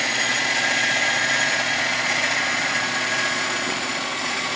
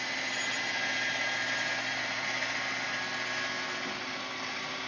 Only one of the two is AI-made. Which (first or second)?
first